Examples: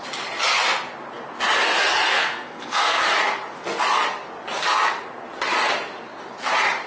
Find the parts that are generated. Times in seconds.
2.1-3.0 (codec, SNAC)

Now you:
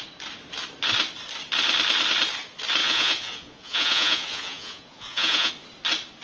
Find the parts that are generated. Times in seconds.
2.8-5.5 (vocoder, Vocos)

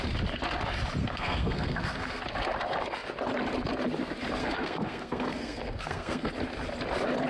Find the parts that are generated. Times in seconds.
1.0-2.2 (codec, SNAC); 4.4-6.3

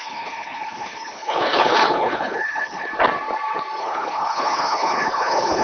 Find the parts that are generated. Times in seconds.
0.0-2.9 (codec, HILCodec); 3.8-5.6

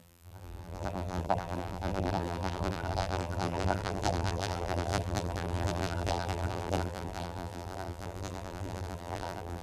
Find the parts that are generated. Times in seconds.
0.0-9.6 (vocoder, BigVGAN v2)

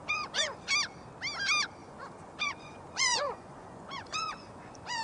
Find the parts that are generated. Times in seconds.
0.0-0.7 (vocoder, Vocos); 1.8-5.0